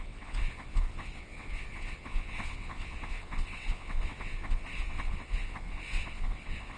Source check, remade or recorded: remade